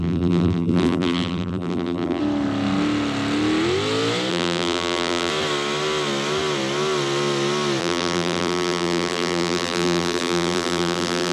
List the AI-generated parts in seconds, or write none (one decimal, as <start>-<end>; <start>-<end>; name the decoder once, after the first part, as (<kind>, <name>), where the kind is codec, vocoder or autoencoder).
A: 0.0-2.2 (vocoder, BigVGAN v2); 4.3-5.3; 7.8-11.3